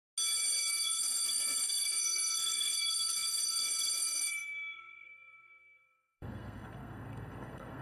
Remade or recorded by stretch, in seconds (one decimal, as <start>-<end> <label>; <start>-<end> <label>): 0.0-0.7 recorded; 0.7-7.8 remade

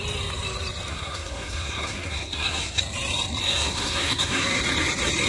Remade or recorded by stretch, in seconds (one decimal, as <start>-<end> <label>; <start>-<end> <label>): 0.0-0.9 recorded; 0.9-2.8 remade; 2.8-3.4 recorded; 3.4-4.6 remade; 4.6-5.3 recorded

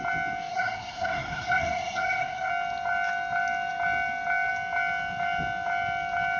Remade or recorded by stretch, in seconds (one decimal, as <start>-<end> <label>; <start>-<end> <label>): 0.0-0.5 recorded; 0.5-2.5 remade; 2.5-6.4 recorded

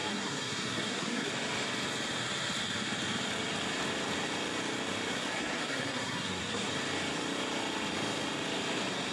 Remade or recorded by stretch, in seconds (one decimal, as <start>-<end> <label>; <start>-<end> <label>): 0.0-1.3 remade; 1.3-5.1 recorded; 5.1-6.7 remade; 6.7-9.1 recorded

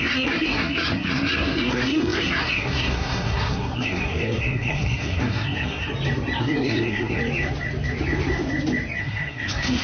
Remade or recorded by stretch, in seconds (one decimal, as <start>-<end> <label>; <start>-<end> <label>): 0.0-5.9 remade; 5.9-6.4 recorded; 6.4-7.2 remade; 7.2-9.0 recorded; 9.0-9.8 remade

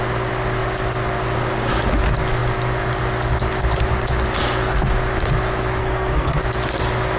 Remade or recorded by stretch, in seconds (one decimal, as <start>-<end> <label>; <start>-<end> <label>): 0.0-5.8 recorded; 5.8-6.4 remade; 6.4-7.2 recorded

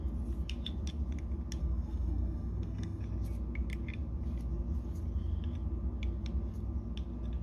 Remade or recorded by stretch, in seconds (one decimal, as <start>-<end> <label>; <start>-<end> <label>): 0.0-1.6 recorded; 1.6-3.0 remade; 3.0-7.4 recorded

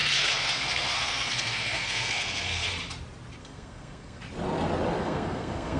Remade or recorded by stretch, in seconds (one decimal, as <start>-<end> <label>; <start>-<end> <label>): 0.0-2.7 remade; 2.7-3.4 recorded; 3.4-4.2 remade; 4.2-5.0 recorded; 5.0-5.8 remade